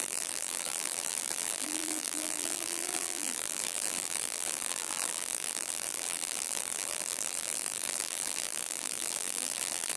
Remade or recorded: remade